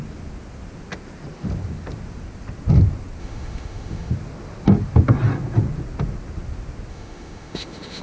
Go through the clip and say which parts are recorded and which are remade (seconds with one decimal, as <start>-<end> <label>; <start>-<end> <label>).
0.0-3.2 recorded; 3.2-4.1 remade; 4.1-6.9 recorded; 6.9-8.0 remade

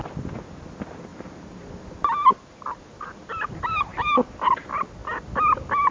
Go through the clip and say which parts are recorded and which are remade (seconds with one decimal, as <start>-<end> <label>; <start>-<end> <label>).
0.0-5.9 recorded